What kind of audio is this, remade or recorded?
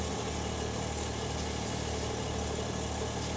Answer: recorded